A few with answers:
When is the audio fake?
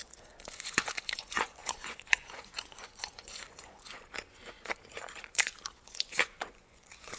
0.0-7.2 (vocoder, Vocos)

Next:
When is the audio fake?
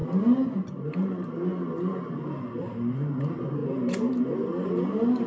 none